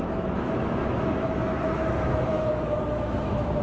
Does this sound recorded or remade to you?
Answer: remade